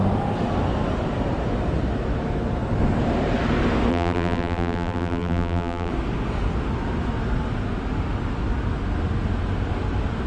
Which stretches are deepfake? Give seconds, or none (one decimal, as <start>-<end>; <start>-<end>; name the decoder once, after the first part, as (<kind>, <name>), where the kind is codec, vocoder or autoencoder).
3.9-5.9 (vocoder, BigVGAN v2)

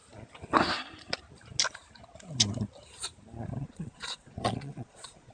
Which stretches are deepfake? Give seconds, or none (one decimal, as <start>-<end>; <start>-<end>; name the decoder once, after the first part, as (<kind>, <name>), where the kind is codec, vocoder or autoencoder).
3.6-5.3 (vocoder, Vocos)